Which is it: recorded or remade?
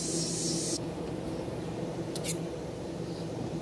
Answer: remade